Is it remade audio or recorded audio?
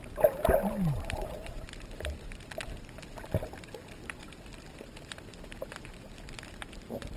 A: recorded